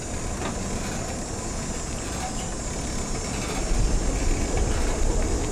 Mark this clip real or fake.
real